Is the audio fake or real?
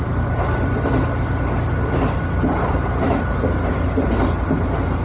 real